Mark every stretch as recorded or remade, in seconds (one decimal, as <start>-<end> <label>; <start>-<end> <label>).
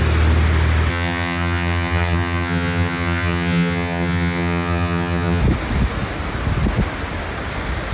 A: 0.0-0.9 recorded; 0.9-5.4 remade; 5.4-7.9 recorded